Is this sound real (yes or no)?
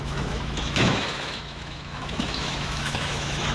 no